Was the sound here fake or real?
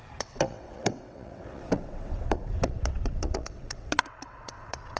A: fake